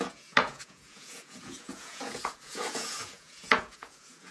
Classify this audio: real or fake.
fake